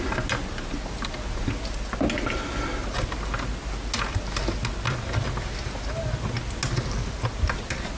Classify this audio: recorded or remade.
recorded